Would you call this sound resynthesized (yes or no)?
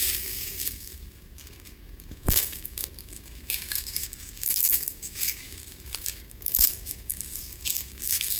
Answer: yes